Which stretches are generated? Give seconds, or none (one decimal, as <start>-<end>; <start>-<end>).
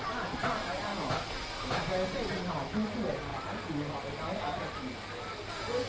none